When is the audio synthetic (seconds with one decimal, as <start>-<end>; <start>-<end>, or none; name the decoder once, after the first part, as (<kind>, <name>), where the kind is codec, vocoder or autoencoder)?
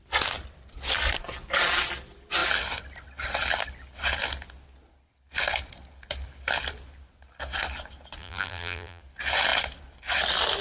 8.2-9.0 (vocoder, BigVGAN v2)